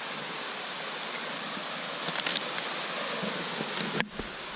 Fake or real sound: real